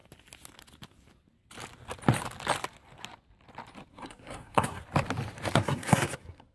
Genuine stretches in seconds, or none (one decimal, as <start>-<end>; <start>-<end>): 0.0-3.9; 4.8-5.5